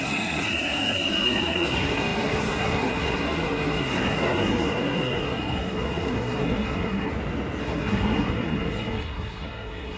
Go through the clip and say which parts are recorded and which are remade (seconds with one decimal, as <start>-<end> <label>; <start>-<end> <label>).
0.0-7.1 remade; 7.1-7.6 recorded; 7.6-10.0 remade